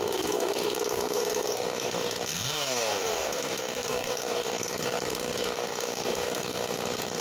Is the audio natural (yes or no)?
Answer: no